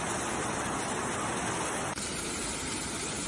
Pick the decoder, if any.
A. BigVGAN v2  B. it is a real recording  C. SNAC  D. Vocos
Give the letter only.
B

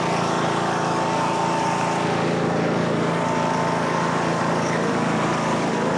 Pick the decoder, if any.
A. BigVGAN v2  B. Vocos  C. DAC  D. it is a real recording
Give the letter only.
C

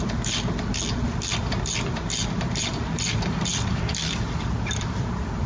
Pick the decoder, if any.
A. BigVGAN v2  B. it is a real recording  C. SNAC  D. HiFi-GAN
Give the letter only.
A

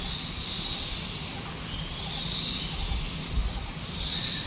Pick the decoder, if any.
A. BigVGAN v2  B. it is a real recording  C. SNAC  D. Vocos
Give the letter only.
B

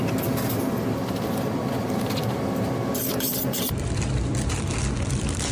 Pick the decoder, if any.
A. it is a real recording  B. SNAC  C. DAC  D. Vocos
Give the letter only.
A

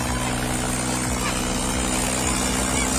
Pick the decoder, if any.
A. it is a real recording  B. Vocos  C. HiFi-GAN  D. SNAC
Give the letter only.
A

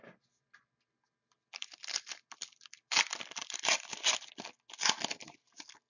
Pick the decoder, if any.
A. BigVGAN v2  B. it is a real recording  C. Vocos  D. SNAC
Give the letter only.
B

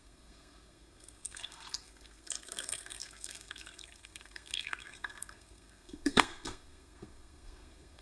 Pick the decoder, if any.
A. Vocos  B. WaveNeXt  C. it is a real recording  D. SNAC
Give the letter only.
D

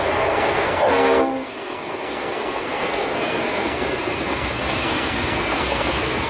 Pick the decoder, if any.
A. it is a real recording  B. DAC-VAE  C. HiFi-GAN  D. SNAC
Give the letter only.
D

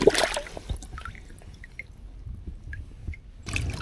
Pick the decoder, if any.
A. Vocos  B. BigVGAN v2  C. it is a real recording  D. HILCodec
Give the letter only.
C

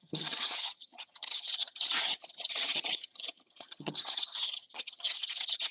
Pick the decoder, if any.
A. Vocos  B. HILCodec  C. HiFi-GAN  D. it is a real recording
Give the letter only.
C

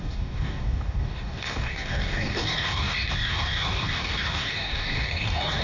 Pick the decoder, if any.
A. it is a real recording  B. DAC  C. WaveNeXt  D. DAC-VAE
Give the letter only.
B